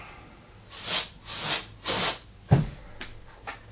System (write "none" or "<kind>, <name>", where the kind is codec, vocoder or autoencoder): none